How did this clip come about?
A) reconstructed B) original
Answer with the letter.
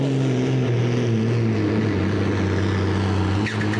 B